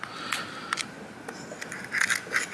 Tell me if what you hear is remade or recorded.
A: recorded